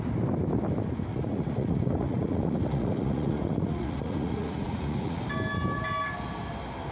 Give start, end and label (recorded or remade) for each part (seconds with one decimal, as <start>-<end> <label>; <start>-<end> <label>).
0.0-1.1 recorded; 1.1-5.2 remade; 5.2-6.9 recorded